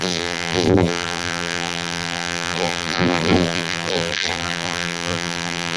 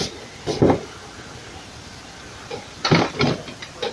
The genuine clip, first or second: second